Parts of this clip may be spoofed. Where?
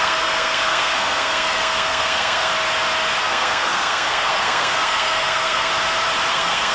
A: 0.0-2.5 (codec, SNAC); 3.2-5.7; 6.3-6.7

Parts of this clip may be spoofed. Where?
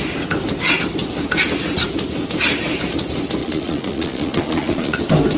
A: 3.4-5.0 (vocoder, Vocos)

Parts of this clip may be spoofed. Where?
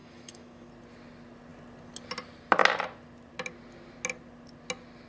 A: 0.0-0.7 (autoencoder, DAC-VAE)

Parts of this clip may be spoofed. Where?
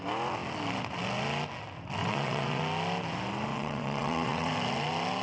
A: 2.0-2.6 (vocoder, WaveNeXt); 3.5-4.5